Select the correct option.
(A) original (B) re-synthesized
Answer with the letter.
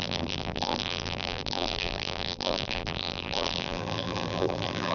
B